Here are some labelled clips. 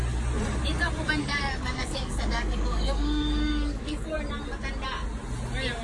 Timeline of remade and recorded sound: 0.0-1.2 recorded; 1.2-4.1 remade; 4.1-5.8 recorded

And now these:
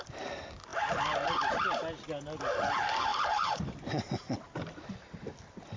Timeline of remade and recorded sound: 0.0-5.8 recorded

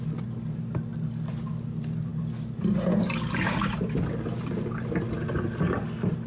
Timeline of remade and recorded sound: 0.0-6.3 recorded

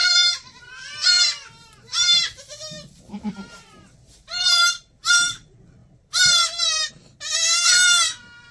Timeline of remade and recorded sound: 0.0-5.1 remade; 5.1-5.8 recorded; 5.8-6.9 remade; 6.9-8.5 recorded

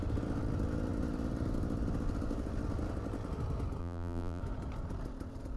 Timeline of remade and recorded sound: 0.0-3.8 recorded; 3.8-4.4 remade; 4.4-5.6 recorded